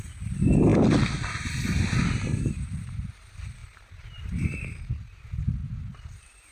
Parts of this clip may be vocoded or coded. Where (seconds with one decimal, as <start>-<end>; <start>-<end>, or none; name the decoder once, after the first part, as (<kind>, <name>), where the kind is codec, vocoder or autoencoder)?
none